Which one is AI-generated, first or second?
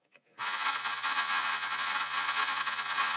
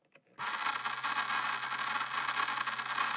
first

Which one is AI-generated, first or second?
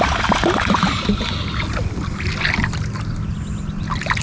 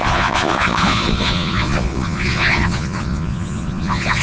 second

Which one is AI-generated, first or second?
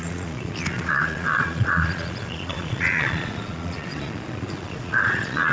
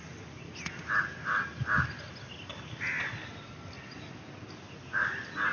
first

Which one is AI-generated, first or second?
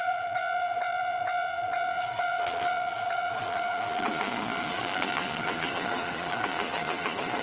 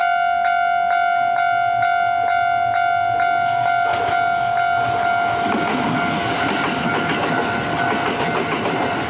first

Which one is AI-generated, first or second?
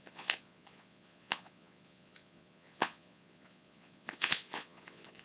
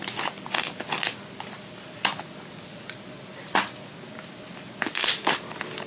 first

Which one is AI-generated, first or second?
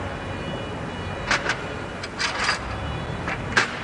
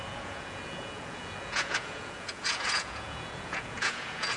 second